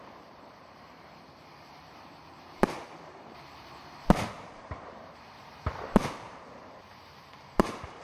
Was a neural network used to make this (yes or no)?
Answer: yes